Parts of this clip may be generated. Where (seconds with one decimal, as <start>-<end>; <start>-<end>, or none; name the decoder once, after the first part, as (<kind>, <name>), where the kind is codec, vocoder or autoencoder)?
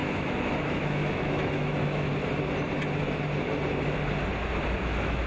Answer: 0.0-2.1 (autoencoder, DAC-VAE); 4.8-5.3